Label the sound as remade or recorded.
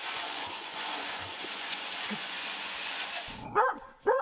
remade